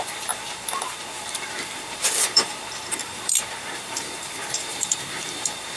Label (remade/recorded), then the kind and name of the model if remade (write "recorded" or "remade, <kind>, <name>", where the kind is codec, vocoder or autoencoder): remade, vocoder, BigVGAN v2